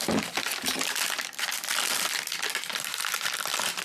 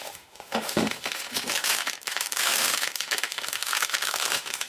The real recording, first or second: first